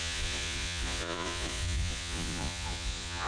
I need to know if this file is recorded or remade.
remade